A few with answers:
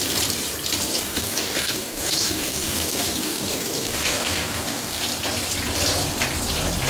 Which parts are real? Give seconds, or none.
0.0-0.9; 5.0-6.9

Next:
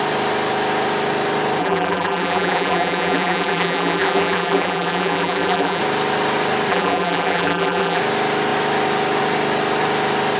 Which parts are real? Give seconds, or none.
0.0-1.6; 5.8-6.7; 8.0-10.4

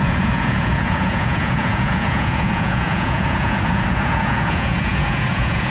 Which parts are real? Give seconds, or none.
none

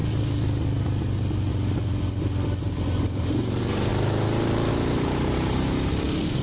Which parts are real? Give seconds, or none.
0.0-3.0; 3.9-4.7

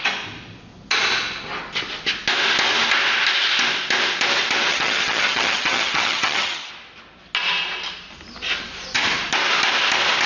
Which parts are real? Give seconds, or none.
0.0-4.7; 6.7-10.3